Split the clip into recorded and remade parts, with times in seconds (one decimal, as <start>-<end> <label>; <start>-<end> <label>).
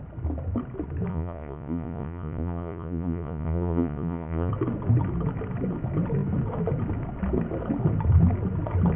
0.0-1.1 recorded; 1.1-4.5 remade; 4.5-9.0 recorded